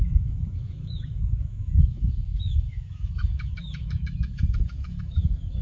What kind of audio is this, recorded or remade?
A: remade